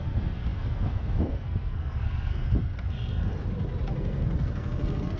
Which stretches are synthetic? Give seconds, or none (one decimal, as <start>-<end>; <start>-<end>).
0.0-3.3; 3.9-5.2